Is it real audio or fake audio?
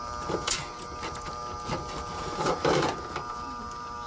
fake